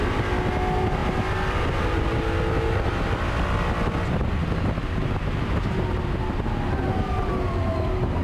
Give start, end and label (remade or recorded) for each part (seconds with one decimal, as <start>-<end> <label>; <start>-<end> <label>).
0.0-8.2 recorded